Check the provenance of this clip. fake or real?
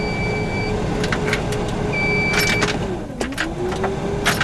real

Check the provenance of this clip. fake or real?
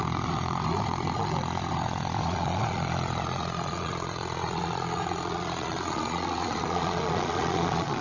fake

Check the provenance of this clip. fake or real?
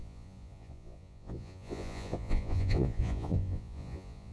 fake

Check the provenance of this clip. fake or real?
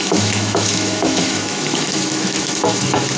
fake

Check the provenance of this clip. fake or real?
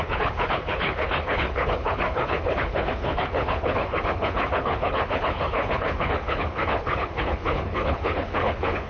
fake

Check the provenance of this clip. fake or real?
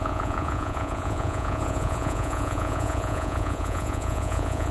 fake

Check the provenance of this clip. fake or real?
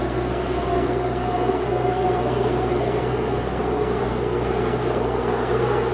fake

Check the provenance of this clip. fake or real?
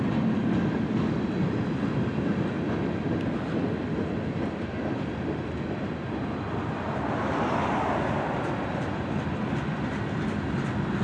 real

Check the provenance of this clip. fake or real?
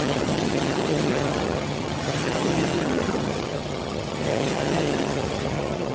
fake